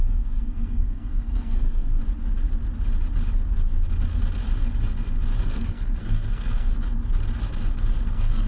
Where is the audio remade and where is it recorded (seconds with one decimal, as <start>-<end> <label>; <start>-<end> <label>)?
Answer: 0.0-2.0 remade; 2.0-5.4 recorded; 5.4-6.7 remade; 6.7-8.0 recorded; 8.0-8.5 remade